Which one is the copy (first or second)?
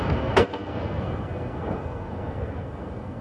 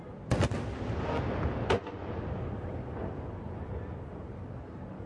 first